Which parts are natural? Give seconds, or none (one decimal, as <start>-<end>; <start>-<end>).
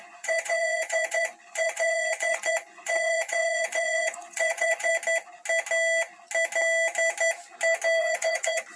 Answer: 4.9-8.0